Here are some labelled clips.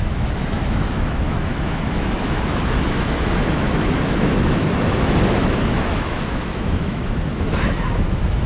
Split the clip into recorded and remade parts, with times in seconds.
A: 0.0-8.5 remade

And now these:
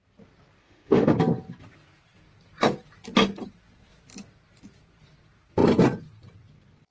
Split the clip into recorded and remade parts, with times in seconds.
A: 0.0-0.6 recorded; 0.6-1.1 remade; 1.1-6.9 recorded

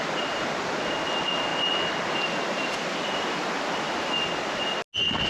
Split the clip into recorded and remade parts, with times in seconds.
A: 0.0-5.3 recorded

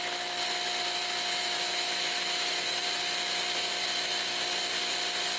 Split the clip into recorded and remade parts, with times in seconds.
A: 0.0-1.3 recorded; 1.3-2.8 remade; 2.8-5.4 recorded